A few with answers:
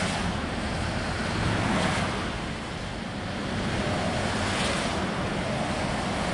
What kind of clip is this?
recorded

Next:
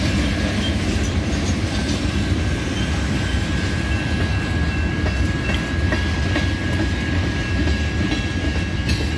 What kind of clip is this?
recorded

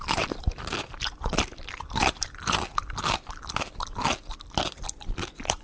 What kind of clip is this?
recorded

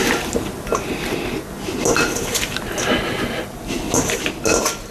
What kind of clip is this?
recorded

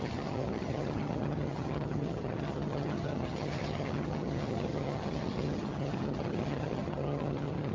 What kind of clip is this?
remade